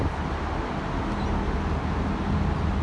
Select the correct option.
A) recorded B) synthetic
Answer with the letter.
A